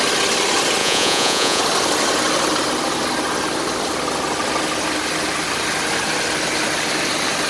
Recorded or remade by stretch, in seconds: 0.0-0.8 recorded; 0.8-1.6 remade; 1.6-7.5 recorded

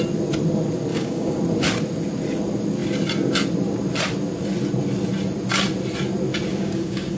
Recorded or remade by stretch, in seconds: 0.0-0.9 recorded; 0.9-1.4 remade; 1.4-6.5 recorded; 6.5-7.2 remade

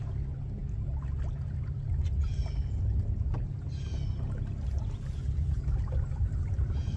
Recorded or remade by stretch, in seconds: 0.0-7.0 recorded

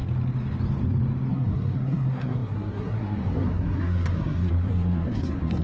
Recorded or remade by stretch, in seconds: 0.0-1.3 recorded; 1.3-5.6 remade

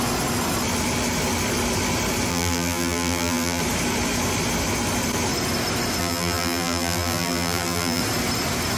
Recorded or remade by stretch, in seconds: 0.0-2.3 recorded; 2.3-3.6 remade; 3.6-6.0 recorded; 6.0-8.0 remade; 8.0-8.8 recorded